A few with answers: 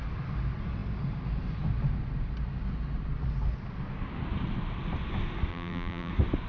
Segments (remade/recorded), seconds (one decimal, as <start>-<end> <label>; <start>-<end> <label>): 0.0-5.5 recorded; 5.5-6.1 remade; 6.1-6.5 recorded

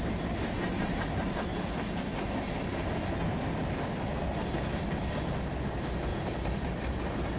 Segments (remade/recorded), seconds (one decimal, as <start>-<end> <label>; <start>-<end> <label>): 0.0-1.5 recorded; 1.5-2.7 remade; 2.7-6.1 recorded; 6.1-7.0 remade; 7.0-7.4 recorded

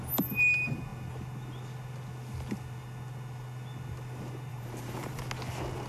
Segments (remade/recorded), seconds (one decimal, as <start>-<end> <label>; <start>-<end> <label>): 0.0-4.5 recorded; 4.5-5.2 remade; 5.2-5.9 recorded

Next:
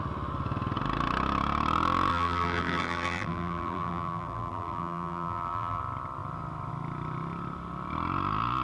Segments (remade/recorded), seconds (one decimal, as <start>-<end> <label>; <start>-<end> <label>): 0.0-2.1 recorded; 2.1-5.8 remade; 5.8-8.6 recorded

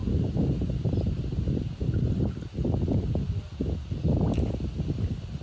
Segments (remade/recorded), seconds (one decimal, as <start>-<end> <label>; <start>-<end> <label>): 0.0-2.0 remade; 2.0-5.4 recorded

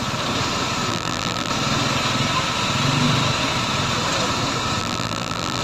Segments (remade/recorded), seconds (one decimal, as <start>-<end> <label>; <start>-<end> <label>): 0.0-0.9 recorded; 0.9-1.5 remade; 1.5-4.8 recorded; 4.8-5.6 remade